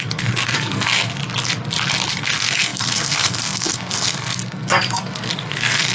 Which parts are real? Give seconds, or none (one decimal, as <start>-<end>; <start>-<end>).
1.2-2.1

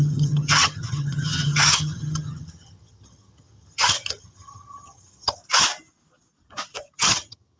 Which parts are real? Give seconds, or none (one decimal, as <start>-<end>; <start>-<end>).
5.4-7.0

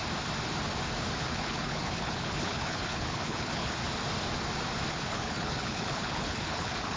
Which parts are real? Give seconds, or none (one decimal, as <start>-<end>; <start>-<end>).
0.0-1.2; 3.8-4.9

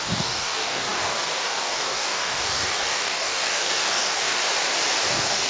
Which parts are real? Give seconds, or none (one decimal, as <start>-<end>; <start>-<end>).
4.4-5.1

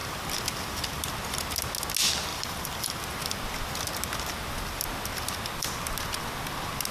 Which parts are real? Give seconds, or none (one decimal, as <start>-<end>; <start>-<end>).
1.1-2.3; 3.0-6.9

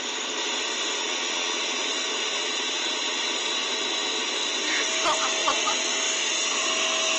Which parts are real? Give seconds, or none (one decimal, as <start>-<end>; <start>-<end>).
0.0-1.0; 1.9-2.4; 3.3-5.4; 5.9-7.2

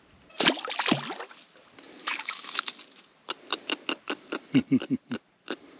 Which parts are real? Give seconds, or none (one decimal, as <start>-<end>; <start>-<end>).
0.0-2.0; 2.8-5.8